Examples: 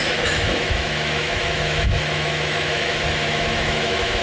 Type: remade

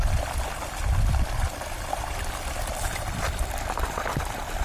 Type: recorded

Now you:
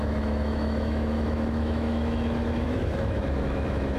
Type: remade